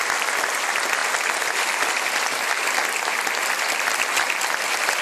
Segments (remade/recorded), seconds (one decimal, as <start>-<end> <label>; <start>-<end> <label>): 0.0-5.0 recorded